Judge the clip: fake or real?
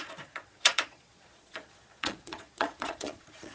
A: fake